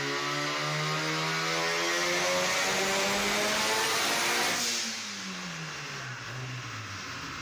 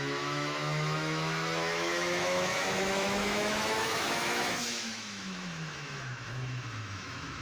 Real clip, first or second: first